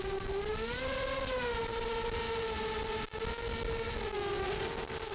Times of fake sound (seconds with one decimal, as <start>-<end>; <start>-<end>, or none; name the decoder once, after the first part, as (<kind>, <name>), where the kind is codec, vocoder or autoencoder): none